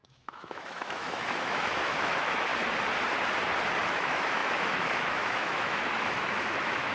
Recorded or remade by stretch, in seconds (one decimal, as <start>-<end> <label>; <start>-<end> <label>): 0.0-2.5 remade; 2.5-3.9 recorded; 3.9-6.9 remade